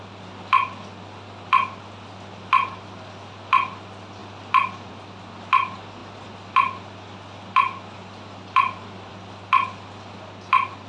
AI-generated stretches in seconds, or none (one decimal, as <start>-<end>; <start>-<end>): none